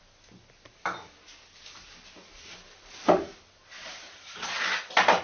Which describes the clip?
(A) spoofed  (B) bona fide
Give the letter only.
B